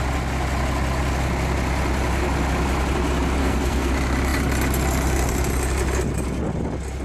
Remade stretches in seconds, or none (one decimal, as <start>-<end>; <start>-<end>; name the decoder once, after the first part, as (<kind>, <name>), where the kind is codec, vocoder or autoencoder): 3.4-3.9 (codec, SNAC)